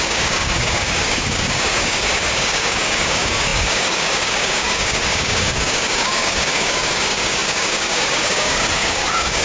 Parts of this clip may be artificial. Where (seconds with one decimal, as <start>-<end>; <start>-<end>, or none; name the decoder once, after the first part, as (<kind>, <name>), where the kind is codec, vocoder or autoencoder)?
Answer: 0.0-9.4 (codec, DAC)